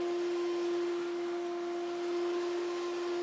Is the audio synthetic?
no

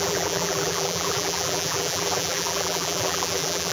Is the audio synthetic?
yes